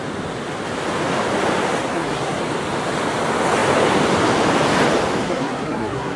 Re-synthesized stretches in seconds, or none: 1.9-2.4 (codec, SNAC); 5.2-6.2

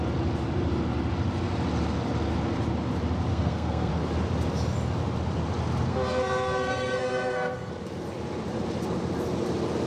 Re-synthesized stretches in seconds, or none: 3.3-3.9 (codec, SNAC); 5.9-7.7

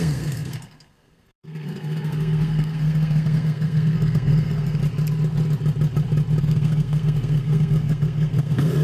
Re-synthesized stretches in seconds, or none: 0.0-4.8 (codec, SNAC); 6.4-8.8

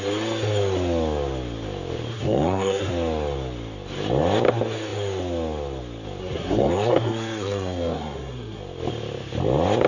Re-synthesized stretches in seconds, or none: 2.1-2.9 (codec, SNAC); 6.2-8.6

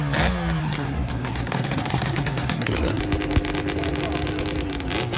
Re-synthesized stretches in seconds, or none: 0.6-3.0 (codec, SNAC)